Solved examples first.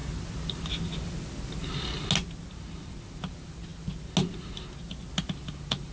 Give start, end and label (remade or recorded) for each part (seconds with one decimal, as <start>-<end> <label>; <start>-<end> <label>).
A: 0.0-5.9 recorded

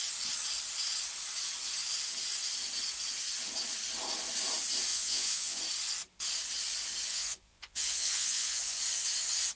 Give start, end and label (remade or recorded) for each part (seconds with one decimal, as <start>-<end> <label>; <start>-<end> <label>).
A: 0.0-4.9 recorded; 4.9-5.6 remade; 5.6-7.1 recorded; 7.1-8.8 remade; 8.8-9.6 recorded

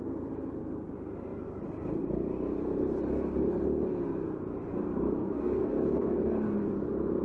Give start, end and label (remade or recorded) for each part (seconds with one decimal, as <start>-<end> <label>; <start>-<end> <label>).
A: 0.0-5.2 recorded; 5.2-6.3 remade; 6.3-7.2 recorded

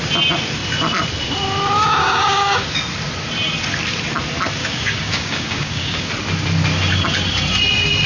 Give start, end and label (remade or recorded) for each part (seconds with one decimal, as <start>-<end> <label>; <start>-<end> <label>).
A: 0.0-2.0 recorded; 2.0-2.8 remade; 2.8-4.6 recorded; 4.6-6.1 remade; 6.1-8.1 recorded